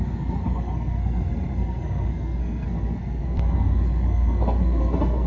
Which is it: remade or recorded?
remade